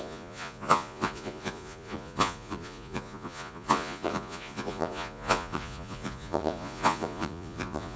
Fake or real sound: fake